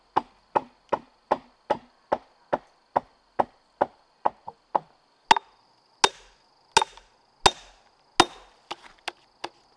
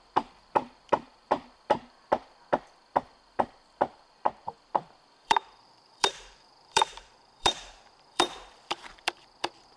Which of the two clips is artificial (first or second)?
second